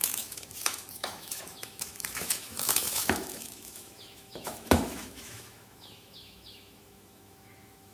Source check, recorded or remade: remade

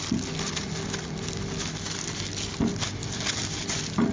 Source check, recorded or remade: recorded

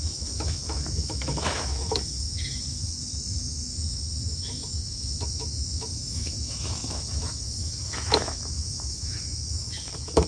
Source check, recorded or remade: remade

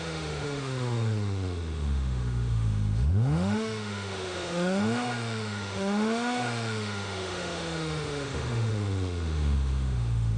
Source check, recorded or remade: remade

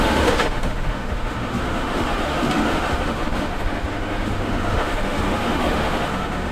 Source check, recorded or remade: remade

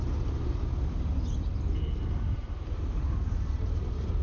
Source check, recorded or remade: recorded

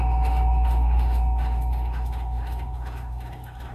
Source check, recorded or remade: remade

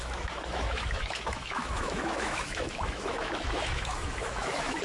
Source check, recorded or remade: remade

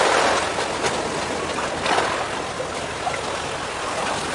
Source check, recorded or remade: recorded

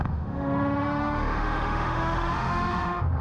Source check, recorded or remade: remade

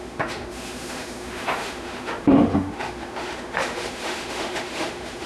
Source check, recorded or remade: remade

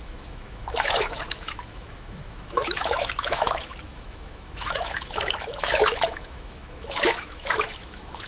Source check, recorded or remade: remade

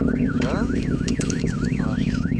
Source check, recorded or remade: remade